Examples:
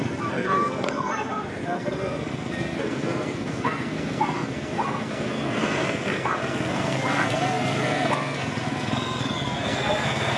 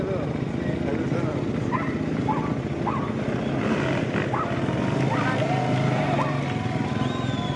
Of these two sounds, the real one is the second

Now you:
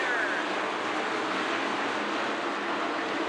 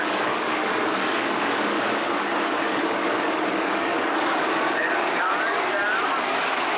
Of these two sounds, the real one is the first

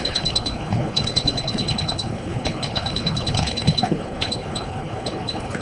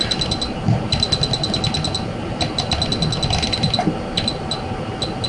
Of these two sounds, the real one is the second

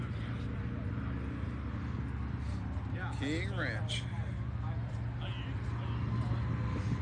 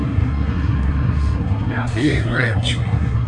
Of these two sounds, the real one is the first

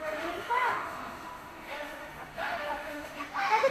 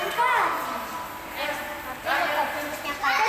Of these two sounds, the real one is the second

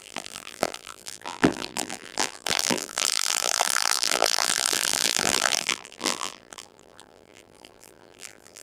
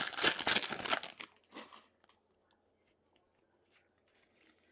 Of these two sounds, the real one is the second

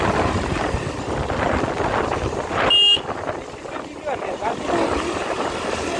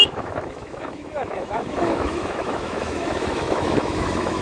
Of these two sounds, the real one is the first